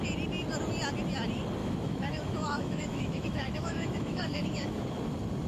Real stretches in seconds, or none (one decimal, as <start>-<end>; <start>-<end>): 0.0-1.6; 4.9-5.5